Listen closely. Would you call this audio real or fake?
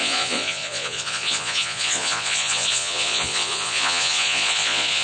fake